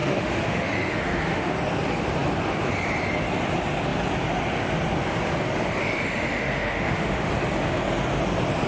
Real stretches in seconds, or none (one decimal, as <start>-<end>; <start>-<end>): 1.5-5.8; 7.3-8.7